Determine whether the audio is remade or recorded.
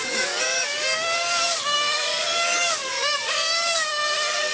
remade